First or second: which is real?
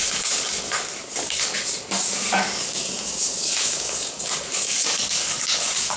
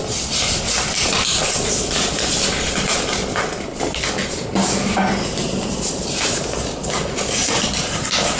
second